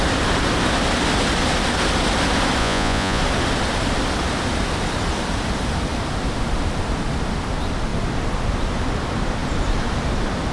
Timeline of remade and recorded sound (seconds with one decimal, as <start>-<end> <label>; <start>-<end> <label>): 0.0-2.6 recorded; 2.6-3.2 remade; 3.2-10.5 recorded